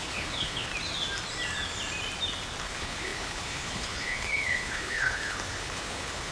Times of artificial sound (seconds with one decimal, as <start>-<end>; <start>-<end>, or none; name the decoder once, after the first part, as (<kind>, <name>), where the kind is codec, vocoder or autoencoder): 0.0-0.7 (codec, HILCodec); 2.6-6.3